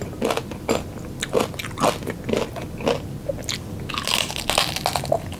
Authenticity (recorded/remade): recorded